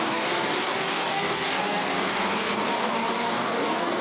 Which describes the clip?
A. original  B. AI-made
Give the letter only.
B